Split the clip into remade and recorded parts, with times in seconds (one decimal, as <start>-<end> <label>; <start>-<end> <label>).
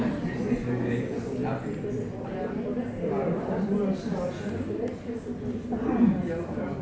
0.0-6.8 recorded